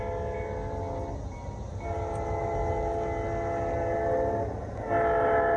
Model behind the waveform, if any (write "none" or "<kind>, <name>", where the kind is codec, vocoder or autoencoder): none